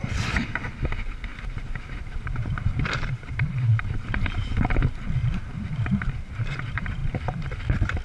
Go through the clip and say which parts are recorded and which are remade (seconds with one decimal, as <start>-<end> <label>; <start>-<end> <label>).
0.0-1.3 recorded; 1.3-5.0 remade; 5.0-7.0 recorded; 7.0-7.6 remade; 7.6-8.0 recorded